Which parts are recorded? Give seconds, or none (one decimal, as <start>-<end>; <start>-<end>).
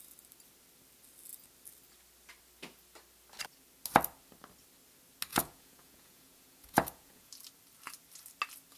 0.0-5.3; 7.3-8.8